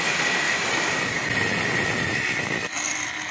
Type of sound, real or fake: real